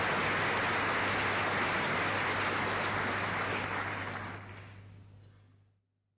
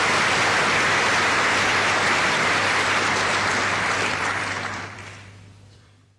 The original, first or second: first